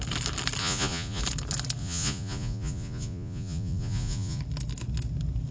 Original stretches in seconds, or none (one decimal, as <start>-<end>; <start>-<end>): 0.0-0.6; 1.2-1.8; 4.4-5.5